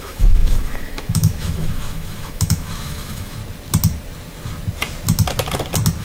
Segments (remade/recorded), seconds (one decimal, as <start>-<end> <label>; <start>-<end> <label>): 0.0-3.4 remade; 3.4-6.0 recorded